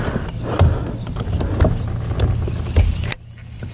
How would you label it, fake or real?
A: real